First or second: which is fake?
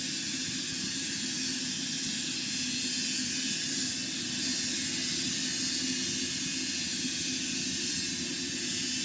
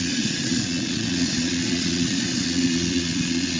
second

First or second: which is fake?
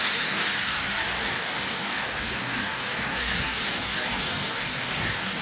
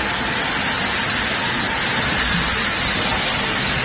first